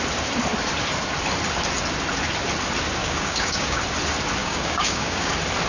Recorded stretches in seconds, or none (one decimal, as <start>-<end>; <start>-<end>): 0.0-3.0; 3.8-4.4; 5.3-5.7